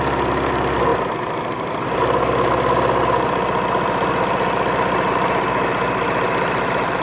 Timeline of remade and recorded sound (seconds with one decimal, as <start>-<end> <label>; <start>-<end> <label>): 0.0-7.0 recorded